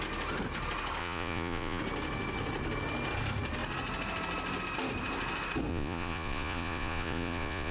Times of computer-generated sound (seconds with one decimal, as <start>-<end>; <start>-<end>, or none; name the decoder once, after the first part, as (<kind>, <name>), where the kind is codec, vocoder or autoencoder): 1.0-1.8 (vocoder, Vocos); 5.7-7.7